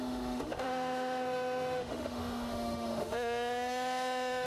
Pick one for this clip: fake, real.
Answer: fake